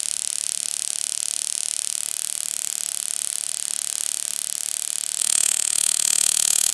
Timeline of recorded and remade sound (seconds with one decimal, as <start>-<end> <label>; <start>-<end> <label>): 0.0-5.2 recorded; 5.2-6.7 remade